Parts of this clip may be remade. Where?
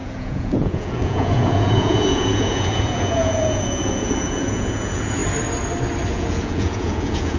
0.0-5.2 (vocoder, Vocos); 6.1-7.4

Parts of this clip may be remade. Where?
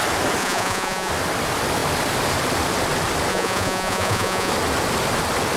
0.4-1.1 (vocoder, Vocos); 3.3-4.5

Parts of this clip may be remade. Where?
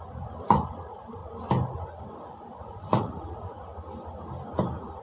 0.0-1.2 (vocoder, Vocos); 2.3-3.7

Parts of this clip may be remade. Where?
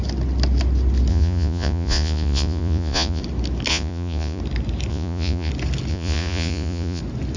1.1-3.2 (vocoder, Vocos); 3.7-4.4; 4.9-5.5; 5.9-7.0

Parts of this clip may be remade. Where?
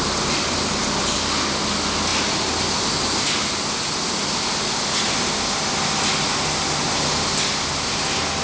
none